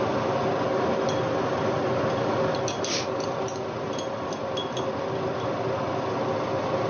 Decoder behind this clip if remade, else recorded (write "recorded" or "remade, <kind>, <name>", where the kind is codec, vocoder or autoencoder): recorded